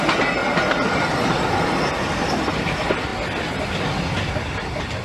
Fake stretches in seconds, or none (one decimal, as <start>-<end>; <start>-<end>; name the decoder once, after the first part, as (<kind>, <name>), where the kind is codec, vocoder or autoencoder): none